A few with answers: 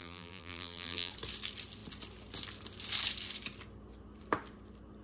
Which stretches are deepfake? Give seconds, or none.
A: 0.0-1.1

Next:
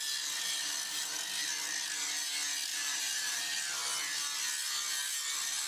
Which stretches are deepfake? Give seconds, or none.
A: 2.7-3.4